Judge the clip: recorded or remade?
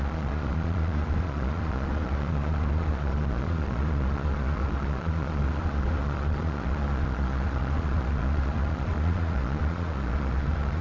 remade